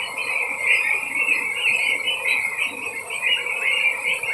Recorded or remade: recorded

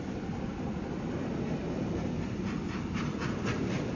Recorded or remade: recorded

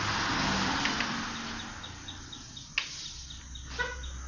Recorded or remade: recorded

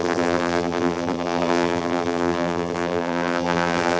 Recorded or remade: remade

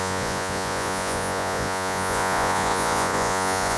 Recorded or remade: remade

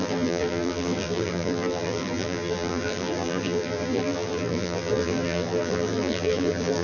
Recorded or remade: remade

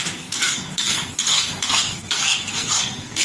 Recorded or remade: remade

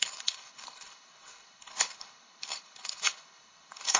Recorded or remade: remade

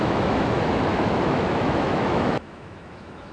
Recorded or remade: remade